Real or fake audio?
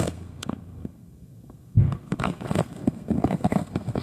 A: fake